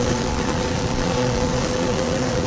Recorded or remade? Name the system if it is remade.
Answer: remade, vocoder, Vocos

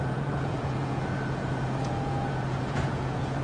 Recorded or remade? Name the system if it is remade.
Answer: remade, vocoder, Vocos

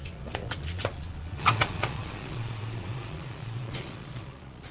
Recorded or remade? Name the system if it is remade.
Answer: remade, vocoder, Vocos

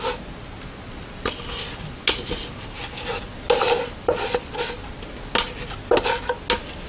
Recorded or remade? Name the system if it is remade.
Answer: recorded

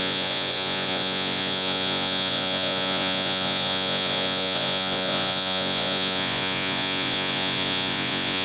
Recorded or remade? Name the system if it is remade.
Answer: remade, vocoder, Vocos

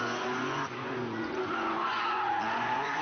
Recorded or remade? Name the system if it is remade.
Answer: remade, vocoder, Vocos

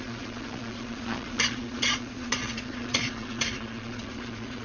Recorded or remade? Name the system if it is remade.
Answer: remade, vocoder, Vocos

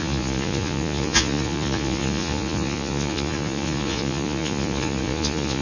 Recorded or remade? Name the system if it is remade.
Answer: remade, vocoder, Vocos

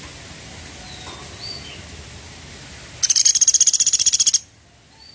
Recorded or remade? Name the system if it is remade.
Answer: recorded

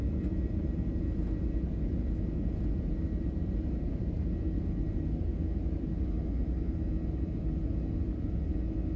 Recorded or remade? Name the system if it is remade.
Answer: recorded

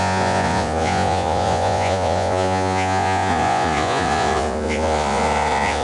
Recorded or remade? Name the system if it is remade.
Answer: remade, vocoder, Vocos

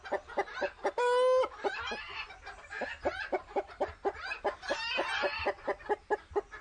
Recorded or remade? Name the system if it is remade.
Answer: recorded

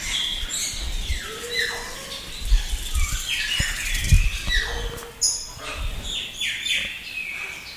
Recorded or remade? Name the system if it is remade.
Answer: recorded